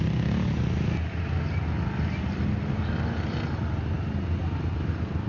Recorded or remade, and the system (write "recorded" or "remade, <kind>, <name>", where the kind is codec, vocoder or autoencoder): recorded